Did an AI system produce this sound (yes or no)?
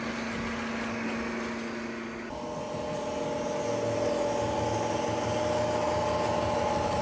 no